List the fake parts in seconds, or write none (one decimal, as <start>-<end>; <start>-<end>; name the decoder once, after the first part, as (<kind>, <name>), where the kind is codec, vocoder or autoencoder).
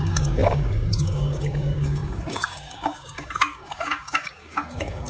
0.0-5.1 (codec, DAC)